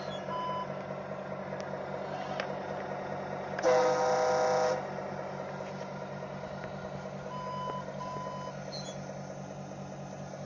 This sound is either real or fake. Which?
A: real